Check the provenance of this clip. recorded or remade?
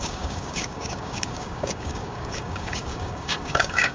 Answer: remade